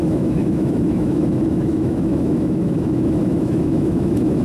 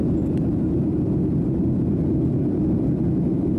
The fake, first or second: first